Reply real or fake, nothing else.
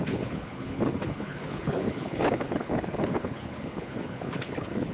fake